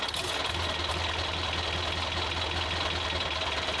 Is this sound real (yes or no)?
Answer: yes